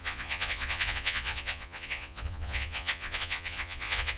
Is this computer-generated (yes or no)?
yes